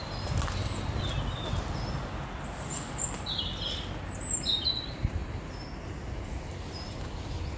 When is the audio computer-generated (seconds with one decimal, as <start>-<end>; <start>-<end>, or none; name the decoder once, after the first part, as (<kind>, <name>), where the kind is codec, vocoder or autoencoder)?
none